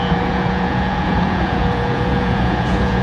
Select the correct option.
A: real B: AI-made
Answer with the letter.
B